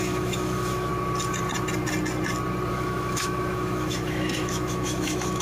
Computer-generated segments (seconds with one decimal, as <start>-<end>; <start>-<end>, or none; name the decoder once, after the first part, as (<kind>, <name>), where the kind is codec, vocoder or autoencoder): 0.0-0.9 (autoencoder, DAC-VAE); 2.7-5.4